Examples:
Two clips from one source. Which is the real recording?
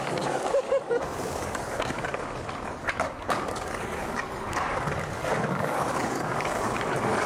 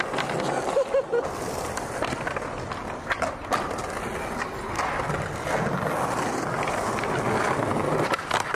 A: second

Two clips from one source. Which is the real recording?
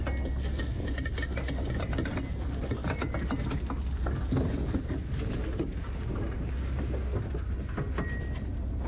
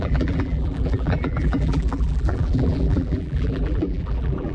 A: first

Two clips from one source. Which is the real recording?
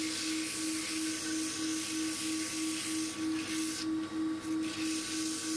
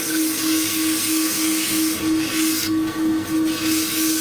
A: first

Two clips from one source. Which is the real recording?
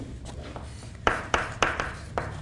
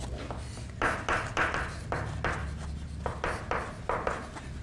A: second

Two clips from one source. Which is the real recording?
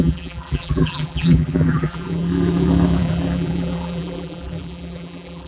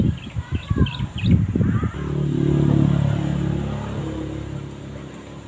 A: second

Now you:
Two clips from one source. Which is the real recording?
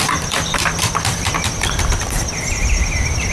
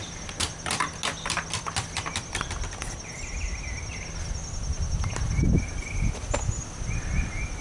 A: second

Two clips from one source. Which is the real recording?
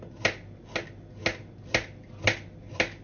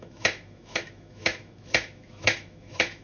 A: first